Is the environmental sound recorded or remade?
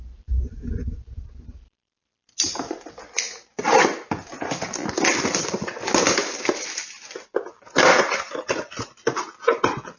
recorded